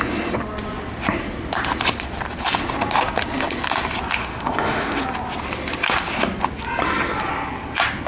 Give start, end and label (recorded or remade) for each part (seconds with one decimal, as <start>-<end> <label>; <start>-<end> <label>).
0.0-4.2 recorded; 4.2-5.0 remade; 5.0-8.1 recorded